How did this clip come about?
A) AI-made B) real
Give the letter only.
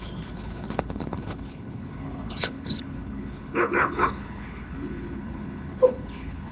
A